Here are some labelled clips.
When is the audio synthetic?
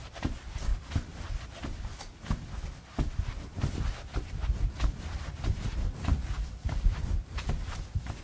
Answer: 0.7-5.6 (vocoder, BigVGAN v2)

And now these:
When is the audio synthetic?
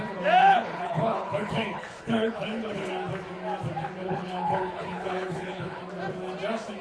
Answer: 0.4-2.9 (codec, HILCodec); 4.0-5.8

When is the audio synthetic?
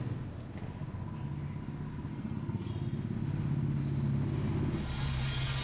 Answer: 2.1-2.7 (codec, SNAC)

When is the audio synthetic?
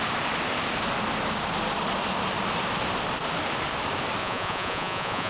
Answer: 4.2-5.3 (vocoder, Vocos)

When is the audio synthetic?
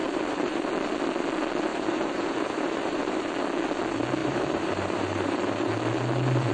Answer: 0.0-0.7 (vocoder, BigVGAN v2); 1.7-3.3; 4.2-5.7